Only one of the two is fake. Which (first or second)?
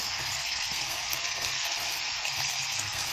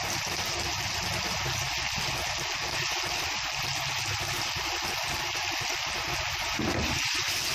first